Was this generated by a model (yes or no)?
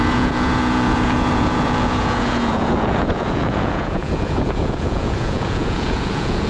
yes